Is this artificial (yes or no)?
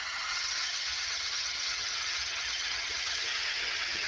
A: yes